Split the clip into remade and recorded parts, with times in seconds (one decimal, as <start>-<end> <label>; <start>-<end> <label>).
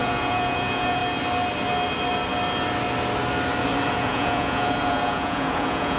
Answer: 0.0-1.0 remade; 1.0-3.9 recorded; 3.9-6.0 remade